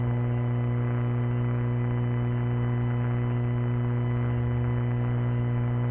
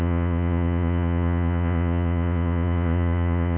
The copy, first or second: second